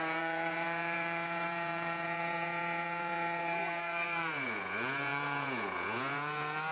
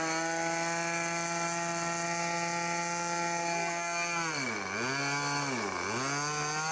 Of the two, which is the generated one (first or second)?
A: first